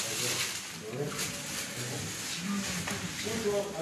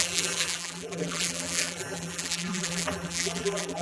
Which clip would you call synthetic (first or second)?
second